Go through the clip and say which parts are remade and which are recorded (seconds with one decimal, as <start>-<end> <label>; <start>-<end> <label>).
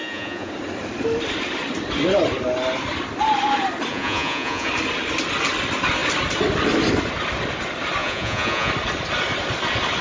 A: 0.0-0.5 remade; 0.5-3.9 recorded; 3.9-4.7 remade; 4.7-8.0 recorded; 8.0-8.7 remade; 8.7-10.0 recorded